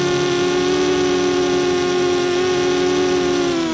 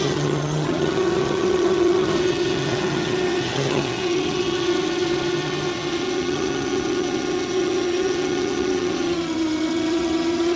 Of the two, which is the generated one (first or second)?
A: second